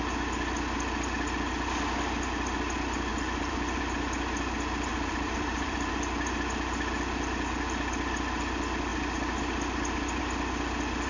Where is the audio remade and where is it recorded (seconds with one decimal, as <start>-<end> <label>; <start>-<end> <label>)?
0.0-3.1 recorded; 3.1-3.8 remade; 3.8-4.9 recorded; 4.9-5.9 remade; 5.9-11.1 recorded